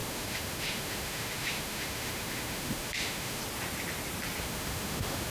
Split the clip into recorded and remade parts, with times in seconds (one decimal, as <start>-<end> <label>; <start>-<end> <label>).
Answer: 0.0-3.4 remade; 3.4-4.4 recorded; 4.4-5.3 remade